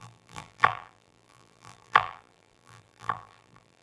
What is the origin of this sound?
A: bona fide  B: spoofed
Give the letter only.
B